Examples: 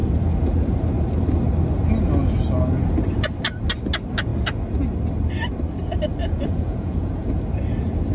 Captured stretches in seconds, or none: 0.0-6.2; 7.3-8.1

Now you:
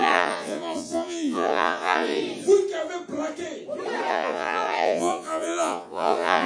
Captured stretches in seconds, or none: 2.2-4.1

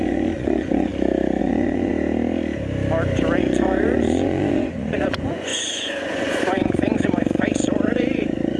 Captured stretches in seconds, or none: 0.9-1.4; 1.9-3.4

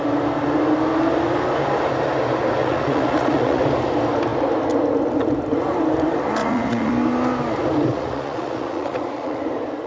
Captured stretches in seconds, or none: 0.0-2.6; 3.6-6.4; 6.9-7.9; 9.4-9.9